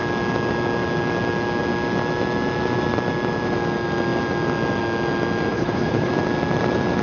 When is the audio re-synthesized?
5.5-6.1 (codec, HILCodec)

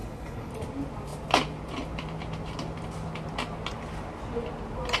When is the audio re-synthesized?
0.0-0.5 (codec, HILCodec)

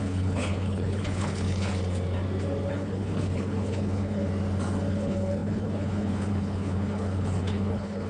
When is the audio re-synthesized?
0.0-1.7 (codec, HILCodec); 2.7-4.3; 4.9-8.1

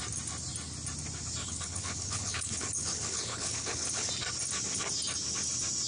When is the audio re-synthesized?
1.4-4.1 (codec, HILCodec)

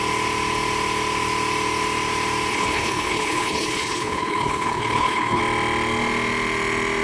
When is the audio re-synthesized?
2.5-5.4 (codec, HILCodec)